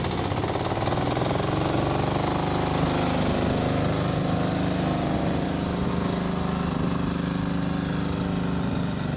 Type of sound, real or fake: real